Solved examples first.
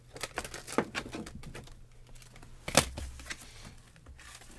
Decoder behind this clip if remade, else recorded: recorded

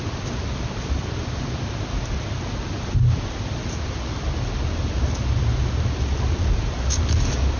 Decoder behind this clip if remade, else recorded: recorded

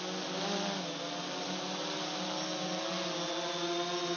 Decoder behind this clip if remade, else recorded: recorded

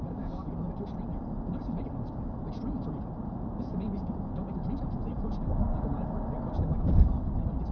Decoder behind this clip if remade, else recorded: recorded